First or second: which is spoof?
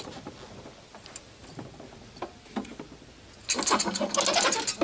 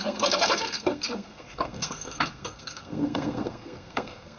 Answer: second